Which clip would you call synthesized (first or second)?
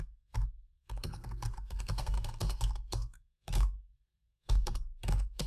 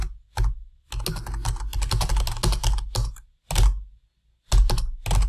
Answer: first